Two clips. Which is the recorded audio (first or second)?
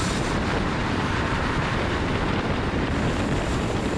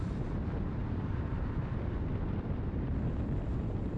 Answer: second